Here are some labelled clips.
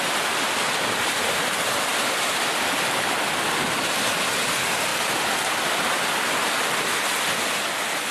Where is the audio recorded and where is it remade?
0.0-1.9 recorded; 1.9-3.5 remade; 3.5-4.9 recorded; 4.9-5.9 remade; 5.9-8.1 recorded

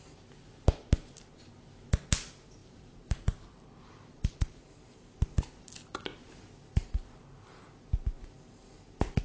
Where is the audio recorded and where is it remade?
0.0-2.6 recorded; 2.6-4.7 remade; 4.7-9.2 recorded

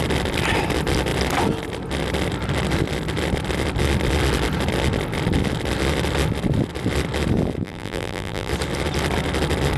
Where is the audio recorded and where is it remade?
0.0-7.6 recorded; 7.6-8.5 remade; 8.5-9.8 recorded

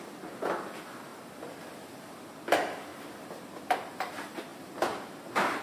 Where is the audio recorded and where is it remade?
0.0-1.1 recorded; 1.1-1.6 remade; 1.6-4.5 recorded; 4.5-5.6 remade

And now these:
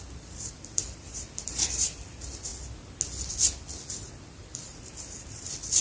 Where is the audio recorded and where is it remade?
0.0-2.5 remade; 2.5-4.2 recorded; 4.2-5.8 remade